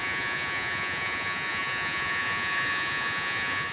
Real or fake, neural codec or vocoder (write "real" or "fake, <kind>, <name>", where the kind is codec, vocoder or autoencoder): fake, vocoder, Vocos